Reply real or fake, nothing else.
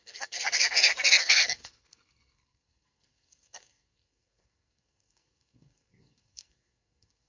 fake